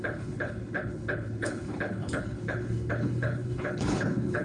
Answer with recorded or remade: remade